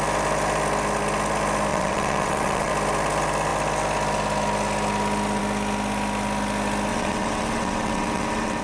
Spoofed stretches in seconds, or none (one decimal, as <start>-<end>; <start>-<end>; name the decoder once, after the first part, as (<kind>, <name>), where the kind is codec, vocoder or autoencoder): 1.7-2.7 (vocoder, WaveNeXt); 6.9-8.6